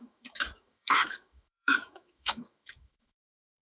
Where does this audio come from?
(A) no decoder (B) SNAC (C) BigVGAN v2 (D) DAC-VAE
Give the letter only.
D